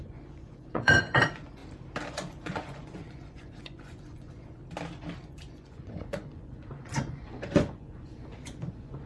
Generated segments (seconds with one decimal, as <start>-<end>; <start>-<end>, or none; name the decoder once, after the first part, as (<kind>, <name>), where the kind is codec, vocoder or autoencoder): 0.0-1.6 (vocoder, Vocos); 2.1-4.6; 5.2-9.1